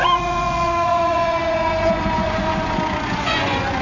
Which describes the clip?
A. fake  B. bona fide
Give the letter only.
A